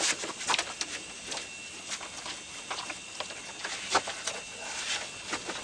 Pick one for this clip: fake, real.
real